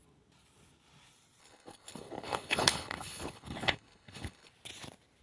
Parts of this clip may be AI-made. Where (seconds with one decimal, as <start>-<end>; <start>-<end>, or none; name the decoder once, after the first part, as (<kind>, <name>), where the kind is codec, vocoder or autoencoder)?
1.4-4.5 (codec, HILCodec)